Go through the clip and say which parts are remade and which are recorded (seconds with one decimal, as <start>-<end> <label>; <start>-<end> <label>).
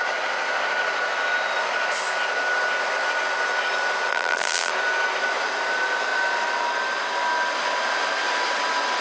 0.0-4.1 recorded; 4.1-4.7 remade; 4.7-9.0 recorded